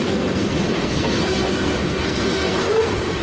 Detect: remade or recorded remade